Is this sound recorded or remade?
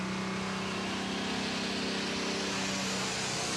recorded